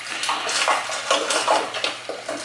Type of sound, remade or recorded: recorded